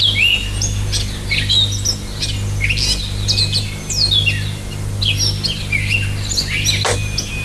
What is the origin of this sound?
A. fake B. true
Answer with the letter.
B